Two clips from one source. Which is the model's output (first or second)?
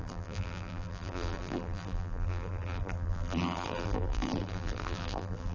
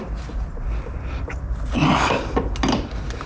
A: first